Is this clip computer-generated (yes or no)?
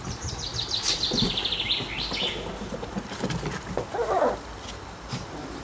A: no